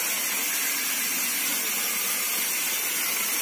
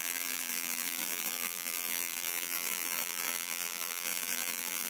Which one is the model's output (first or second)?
second